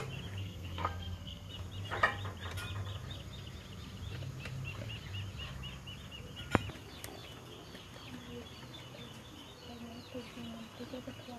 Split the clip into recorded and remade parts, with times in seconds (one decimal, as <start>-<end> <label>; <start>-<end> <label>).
0.0-0.4 recorded; 0.4-1.5 remade; 1.5-11.4 recorded